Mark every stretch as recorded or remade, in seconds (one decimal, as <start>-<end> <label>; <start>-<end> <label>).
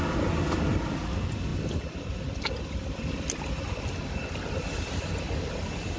0.0-6.0 recorded